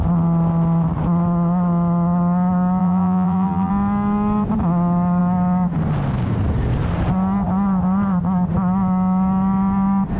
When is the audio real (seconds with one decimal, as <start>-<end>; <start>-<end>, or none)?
0.0-2.8; 3.7-10.2